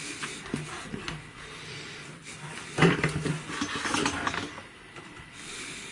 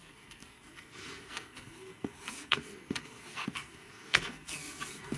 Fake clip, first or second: second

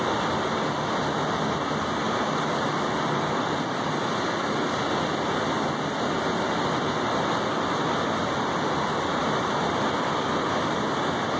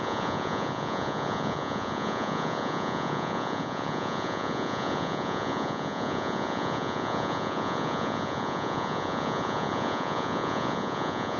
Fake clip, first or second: second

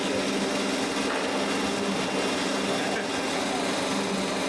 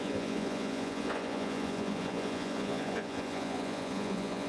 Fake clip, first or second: second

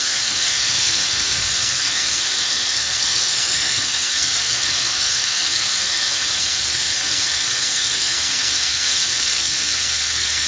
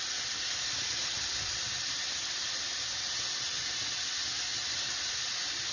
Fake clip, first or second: first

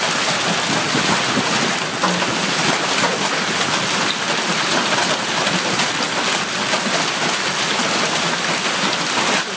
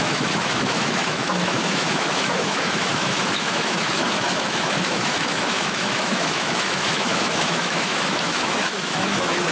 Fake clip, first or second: second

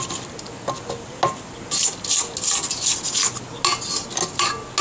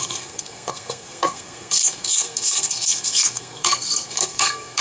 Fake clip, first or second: second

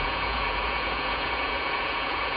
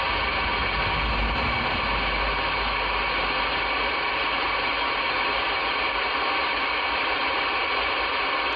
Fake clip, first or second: first